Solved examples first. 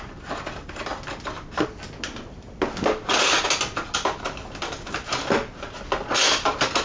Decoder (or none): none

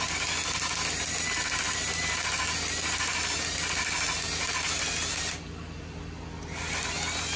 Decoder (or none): none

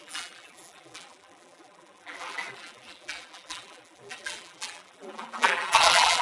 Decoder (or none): vocoder, BigVGAN v2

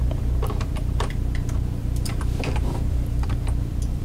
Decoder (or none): vocoder, BigVGAN v2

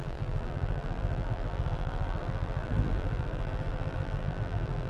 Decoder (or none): vocoder, BigVGAN v2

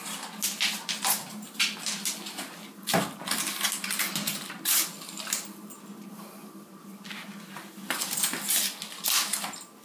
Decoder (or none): none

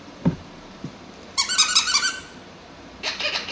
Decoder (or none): vocoder, BigVGAN v2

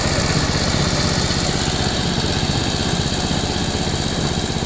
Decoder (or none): none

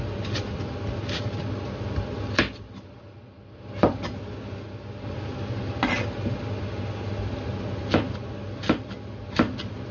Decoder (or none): none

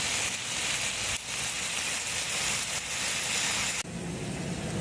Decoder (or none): none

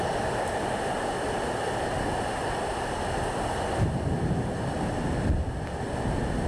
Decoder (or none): none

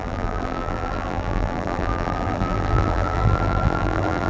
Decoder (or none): vocoder, BigVGAN v2